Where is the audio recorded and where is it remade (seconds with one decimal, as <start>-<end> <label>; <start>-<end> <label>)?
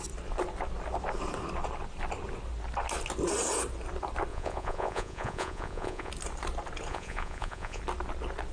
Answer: 0.0-4.3 recorded; 4.3-6.1 remade; 6.1-6.9 recorded; 6.9-7.8 remade; 7.8-8.5 recorded